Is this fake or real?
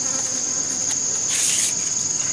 real